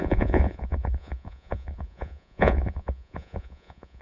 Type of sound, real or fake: fake